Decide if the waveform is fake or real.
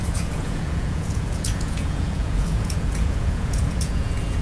fake